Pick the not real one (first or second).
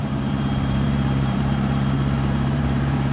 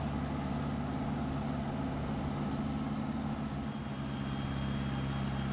first